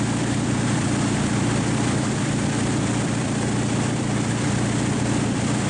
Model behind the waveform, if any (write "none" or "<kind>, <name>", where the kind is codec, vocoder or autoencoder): vocoder, BigVGAN v2